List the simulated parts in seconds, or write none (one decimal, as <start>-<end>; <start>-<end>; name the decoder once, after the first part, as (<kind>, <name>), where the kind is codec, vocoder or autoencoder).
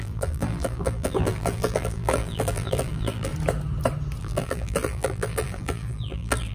0.0-3.3 (vocoder, BigVGAN v2); 4.2-6.5